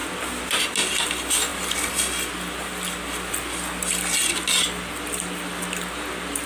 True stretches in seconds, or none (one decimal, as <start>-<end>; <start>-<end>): 0.0-1.5; 3.3-6.5